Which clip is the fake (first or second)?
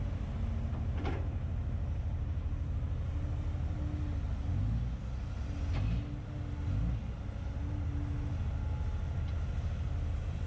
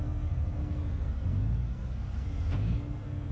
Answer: second